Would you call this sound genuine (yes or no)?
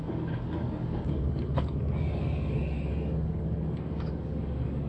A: no